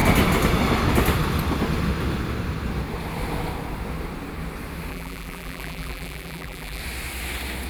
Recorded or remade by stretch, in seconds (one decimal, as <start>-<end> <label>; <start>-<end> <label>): 0.0-4.9 recorded; 4.9-6.8 remade; 6.8-7.7 recorded